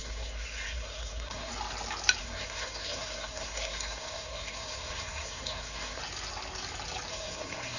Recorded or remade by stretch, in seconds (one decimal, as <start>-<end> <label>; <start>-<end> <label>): 0.0-1.5 remade; 1.5-2.2 recorded; 2.2-6.0 remade; 6.0-7.1 recorded; 7.1-7.8 remade